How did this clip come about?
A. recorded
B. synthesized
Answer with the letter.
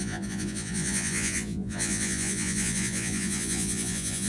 B